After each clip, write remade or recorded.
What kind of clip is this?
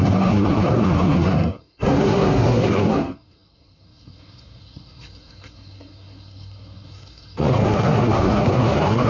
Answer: remade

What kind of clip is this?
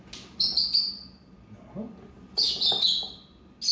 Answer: recorded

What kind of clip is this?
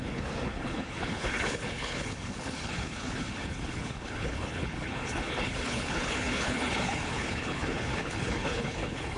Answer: remade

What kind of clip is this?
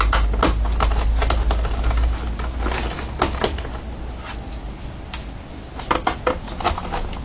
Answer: recorded